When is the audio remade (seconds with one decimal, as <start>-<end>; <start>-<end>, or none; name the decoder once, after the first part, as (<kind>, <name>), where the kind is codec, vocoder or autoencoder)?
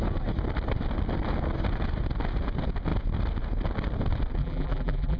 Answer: 4.4-5.2 (vocoder, BigVGAN v2)